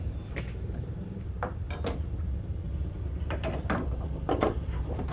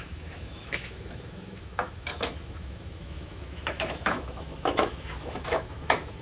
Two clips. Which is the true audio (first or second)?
first